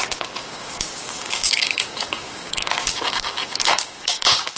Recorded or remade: remade